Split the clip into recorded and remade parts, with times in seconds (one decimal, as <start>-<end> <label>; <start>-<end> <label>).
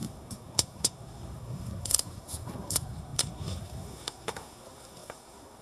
0.0-5.6 remade